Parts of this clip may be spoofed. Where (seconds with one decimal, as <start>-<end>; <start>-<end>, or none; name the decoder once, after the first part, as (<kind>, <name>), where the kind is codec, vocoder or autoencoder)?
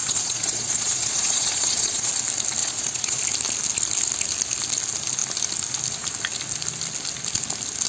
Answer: 0.0-2.1 (vocoder, Vocos); 2.6-3.2